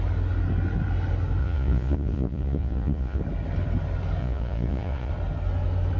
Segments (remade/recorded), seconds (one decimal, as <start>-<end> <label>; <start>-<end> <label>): 0.0-1.4 recorded; 1.4-3.2 remade; 3.2-4.2 recorded; 4.2-5.1 remade; 5.1-6.0 recorded